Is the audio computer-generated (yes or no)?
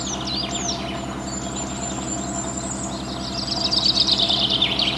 no